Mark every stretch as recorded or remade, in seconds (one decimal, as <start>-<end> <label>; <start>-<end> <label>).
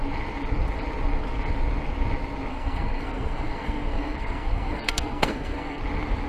0.0-2.5 recorded; 2.5-5.8 remade; 5.8-6.3 recorded